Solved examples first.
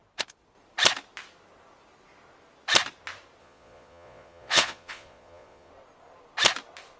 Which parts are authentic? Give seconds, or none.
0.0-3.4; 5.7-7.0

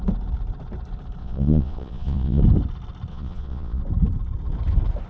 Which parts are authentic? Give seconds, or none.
0.0-1.2; 2.4-3.1; 3.8-5.1